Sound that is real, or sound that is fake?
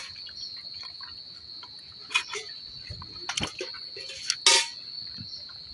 real